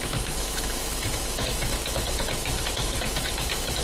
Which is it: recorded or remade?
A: remade